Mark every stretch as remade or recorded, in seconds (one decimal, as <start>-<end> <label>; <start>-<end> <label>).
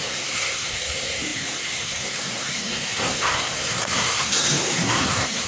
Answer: 0.0-5.5 remade